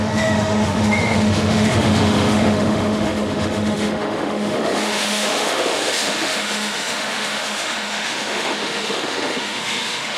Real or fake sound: fake